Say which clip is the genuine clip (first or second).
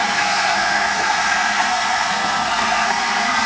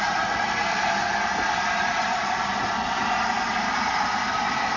second